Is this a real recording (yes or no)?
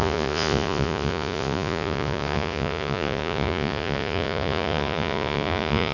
no